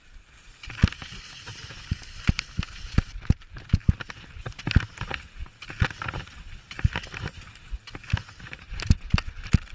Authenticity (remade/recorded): recorded